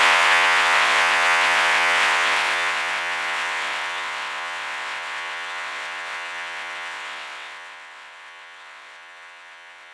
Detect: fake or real fake